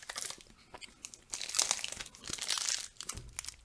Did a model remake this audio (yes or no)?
no